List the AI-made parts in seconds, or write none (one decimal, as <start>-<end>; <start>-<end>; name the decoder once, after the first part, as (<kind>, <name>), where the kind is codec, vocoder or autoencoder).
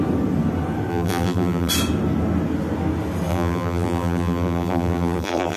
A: 0.9-1.7 (vocoder, BigVGAN v2); 3.3-5.6